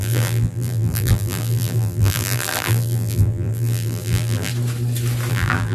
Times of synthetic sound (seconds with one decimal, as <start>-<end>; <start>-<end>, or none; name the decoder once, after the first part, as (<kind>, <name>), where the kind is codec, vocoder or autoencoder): 0.0-4.5 (vocoder, BigVGAN v2); 5.3-5.7